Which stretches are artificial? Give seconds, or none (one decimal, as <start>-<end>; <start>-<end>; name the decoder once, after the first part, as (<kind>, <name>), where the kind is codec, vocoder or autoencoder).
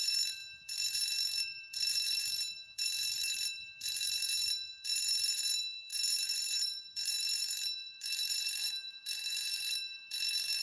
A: 0.0-10.6 (vocoder, BigVGAN v2)